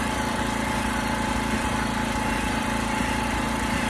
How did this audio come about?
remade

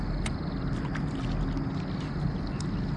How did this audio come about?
recorded